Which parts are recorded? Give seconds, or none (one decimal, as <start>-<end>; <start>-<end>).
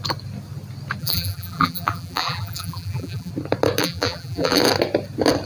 0.0-1.0; 3.3-3.8; 4.6-5.5